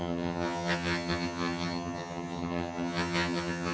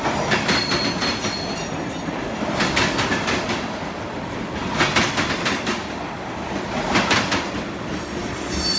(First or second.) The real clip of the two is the second